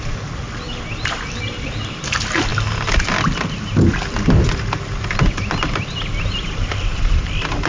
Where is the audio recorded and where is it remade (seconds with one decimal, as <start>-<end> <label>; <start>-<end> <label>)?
0.0-7.7 recorded